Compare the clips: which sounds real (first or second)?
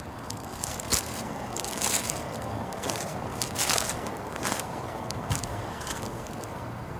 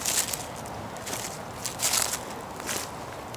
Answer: second